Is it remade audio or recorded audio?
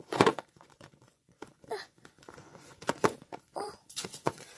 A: remade